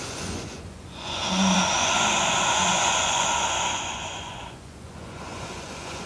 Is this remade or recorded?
remade